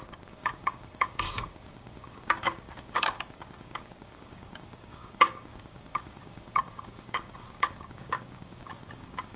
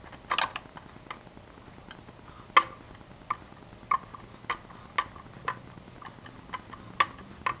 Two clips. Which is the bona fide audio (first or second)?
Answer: second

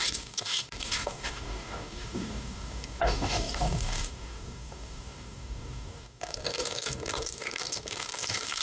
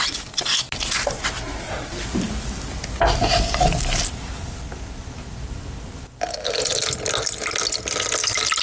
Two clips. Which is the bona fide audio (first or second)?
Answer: second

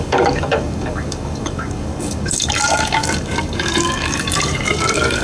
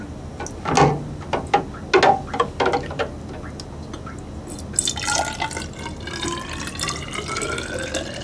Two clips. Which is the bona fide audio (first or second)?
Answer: second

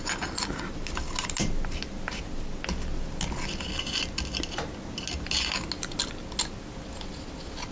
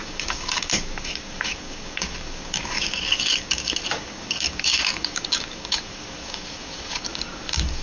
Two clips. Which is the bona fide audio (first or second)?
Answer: first